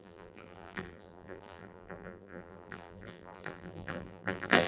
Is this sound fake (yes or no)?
yes